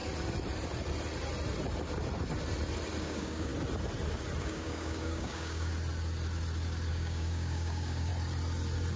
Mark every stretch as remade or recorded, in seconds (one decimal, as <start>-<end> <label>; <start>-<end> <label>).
0.0-3.0 recorded; 3.0-3.5 remade; 3.5-4.4 recorded; 4.4-5.7 remade; 5.7-6.9 recorded; 6.9-8.1 remade; 8.1-9.0 recorded